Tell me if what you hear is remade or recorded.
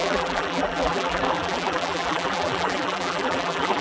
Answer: remade